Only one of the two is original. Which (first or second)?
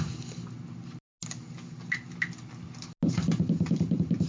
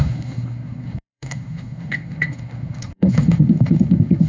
first